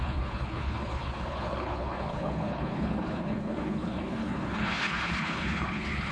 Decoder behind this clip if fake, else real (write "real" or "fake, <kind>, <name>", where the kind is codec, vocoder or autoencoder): fake, codec, HILCodec